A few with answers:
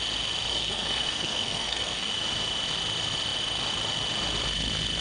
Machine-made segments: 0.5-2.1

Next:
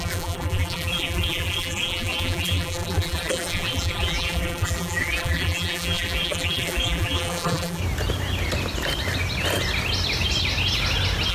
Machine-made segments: 0.0-7.8

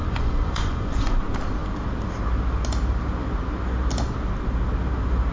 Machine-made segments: 0.0-1.2

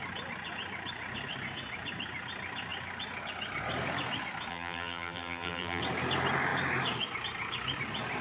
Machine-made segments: 4.5-5.8

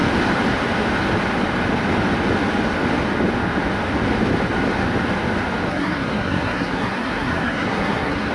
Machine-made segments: 5.7-8.3

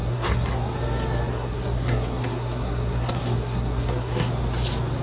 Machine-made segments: 0.0-0.5; 1.3-4.3

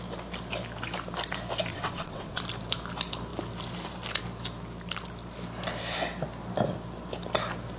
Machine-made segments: 1.7-2.4

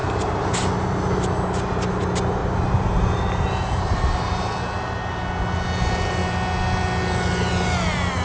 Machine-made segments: 0.0-0.6; 2.4-4.5